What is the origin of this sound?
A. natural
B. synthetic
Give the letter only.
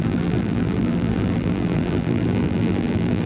B